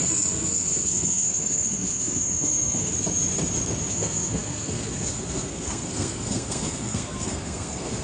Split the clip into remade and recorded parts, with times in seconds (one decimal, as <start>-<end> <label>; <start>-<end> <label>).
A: 0.0-2.9 remade; 2.9-3.9 recorded; 3.9-8.0 remade